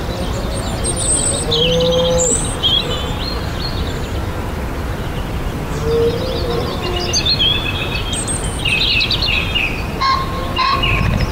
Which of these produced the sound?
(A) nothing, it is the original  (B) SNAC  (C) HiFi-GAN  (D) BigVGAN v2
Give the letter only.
A